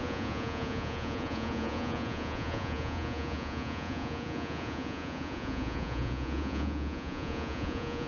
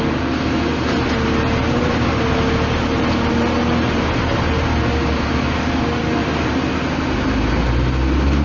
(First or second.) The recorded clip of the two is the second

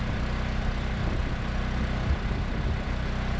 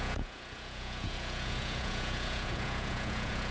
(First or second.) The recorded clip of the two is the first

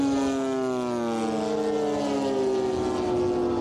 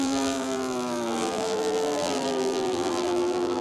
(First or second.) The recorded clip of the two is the first